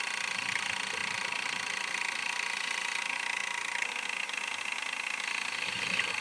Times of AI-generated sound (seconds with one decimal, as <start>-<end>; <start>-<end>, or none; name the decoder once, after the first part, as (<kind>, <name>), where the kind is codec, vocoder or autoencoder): none